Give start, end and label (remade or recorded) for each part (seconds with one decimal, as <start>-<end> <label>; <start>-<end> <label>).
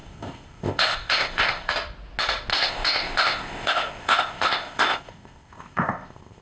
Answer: 0.0-1.7 remade; 1.7-2.5 recorded; 2.5-6.4 remade